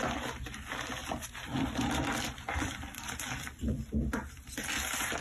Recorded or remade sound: remade